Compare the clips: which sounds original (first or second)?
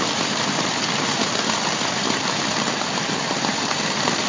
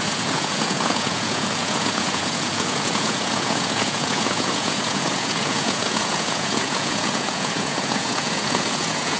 first